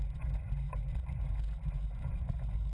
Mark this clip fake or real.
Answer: fake